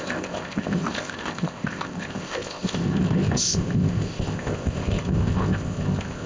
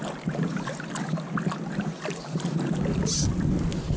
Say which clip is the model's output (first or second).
first